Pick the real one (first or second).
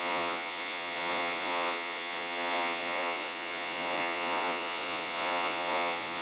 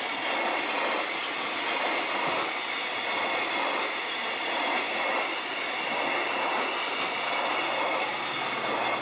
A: second